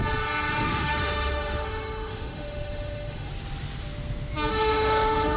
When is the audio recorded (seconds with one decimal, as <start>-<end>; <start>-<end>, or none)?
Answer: 0.0-0.5; 3.3-4.5